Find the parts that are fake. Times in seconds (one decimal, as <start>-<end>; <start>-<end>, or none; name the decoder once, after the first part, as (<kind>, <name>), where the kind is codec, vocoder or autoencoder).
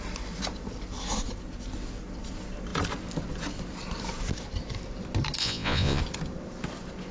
5.4-6.0 (vocoder, Vocos)